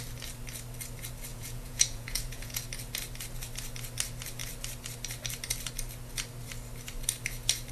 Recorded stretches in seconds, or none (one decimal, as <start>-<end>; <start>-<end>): 0.0-1.3; 2.6-7.7